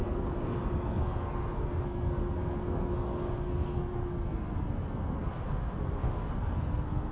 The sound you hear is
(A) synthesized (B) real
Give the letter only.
A